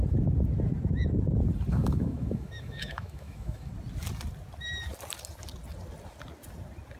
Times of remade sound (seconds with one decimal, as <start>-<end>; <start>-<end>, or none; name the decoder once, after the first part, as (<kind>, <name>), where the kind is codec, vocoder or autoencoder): 1.7-3.7 (autoencoder, DAC-VAE)

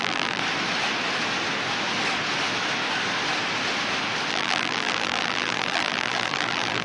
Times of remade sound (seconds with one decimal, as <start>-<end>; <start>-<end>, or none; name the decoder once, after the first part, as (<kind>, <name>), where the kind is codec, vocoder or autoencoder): 0.0-0.4 (vocoder, BigVGAN v2); 4.3-6.8

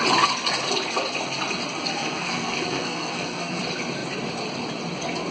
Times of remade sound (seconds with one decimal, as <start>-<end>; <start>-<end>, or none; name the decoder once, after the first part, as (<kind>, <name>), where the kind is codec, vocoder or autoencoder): 1.9-3.6 (codec, SNAC)

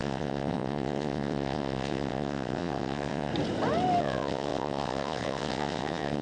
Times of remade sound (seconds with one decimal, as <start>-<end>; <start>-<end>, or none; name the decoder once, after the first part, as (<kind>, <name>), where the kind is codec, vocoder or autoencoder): 0.0-3.3 (vocoder, WaveNeXt); 4.0-6.2

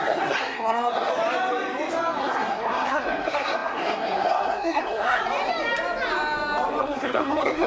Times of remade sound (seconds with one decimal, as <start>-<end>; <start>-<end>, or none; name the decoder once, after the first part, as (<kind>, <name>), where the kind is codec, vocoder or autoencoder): 0.0-1.1 (codec, SNAC); 2.2-5.2; 6.8-7.7

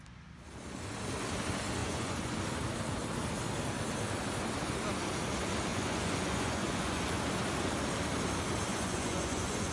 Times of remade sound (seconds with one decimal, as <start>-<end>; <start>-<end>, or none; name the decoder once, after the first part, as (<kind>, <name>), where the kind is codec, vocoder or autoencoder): 1.8-2.4 (vocoder, Vocos); 5.7-7.2; 8.7-9.7

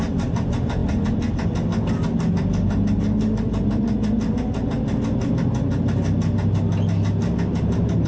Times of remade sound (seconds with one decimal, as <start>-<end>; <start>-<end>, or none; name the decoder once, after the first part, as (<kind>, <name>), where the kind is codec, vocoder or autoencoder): none